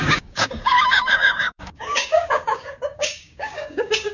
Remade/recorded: remade